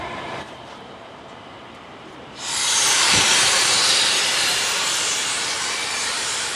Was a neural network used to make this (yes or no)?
yes